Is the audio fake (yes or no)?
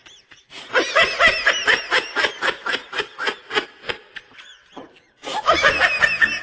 no